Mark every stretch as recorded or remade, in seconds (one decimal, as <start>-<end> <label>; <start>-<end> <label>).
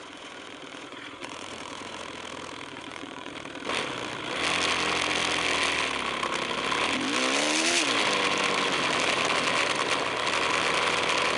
0.0-2.0 remade; 2.0-2.7 recorded; 2.7-3.3 remade; 3.3-11.4 recorded